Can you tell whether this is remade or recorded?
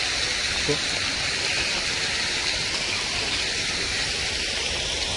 recorded